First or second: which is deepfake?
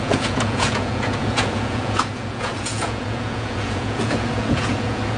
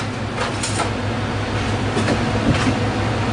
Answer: first